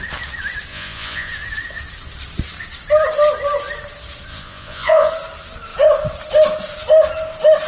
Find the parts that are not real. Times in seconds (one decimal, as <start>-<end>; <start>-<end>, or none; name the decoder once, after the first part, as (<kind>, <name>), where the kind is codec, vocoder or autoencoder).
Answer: 0.7-1.3 (vocoder, Vocos); 4.3-5.1